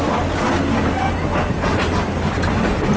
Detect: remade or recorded recorded